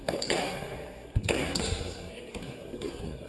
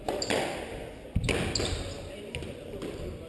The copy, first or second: first